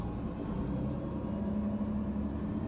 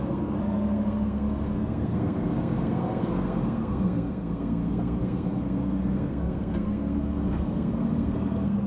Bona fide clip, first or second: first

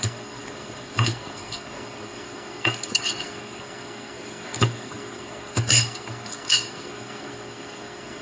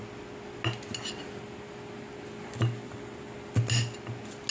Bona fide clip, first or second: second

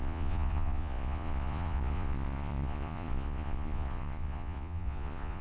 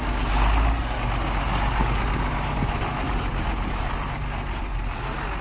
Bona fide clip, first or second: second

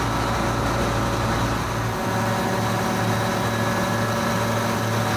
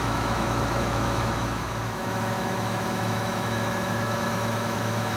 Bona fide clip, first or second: first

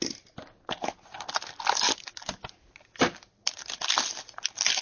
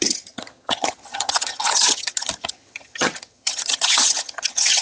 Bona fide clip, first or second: first